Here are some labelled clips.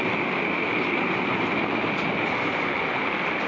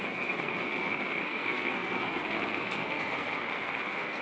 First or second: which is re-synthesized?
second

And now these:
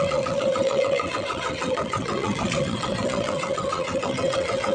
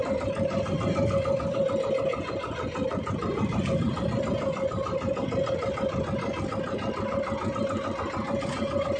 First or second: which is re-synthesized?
first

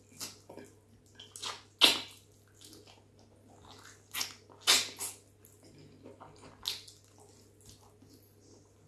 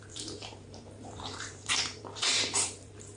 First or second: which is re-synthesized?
second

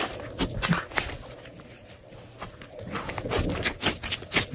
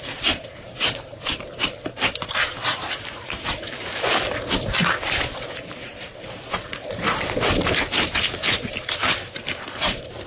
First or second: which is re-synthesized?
second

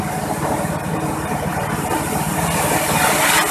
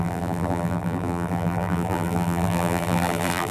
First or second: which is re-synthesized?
second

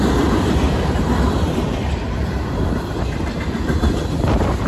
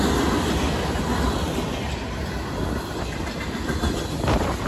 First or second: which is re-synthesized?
first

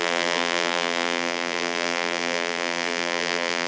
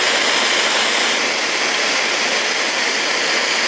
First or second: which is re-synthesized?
first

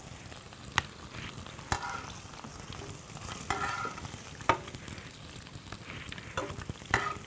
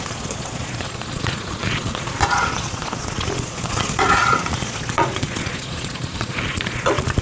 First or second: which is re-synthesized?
second